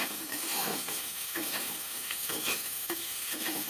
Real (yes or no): no